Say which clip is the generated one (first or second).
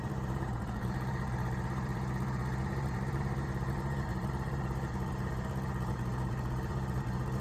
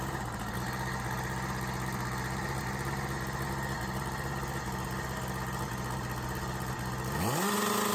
first